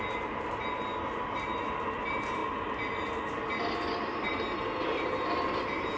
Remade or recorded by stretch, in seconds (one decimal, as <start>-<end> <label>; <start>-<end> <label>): 0.0-0.9 remade; 0.9-2.0 recorded; 2.0-2.4 remade; 2.4-5.0 recorded; 5.0-6.0 remade